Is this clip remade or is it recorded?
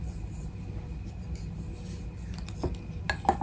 recorded